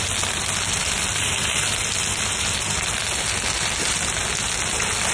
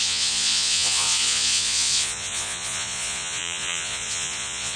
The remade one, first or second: second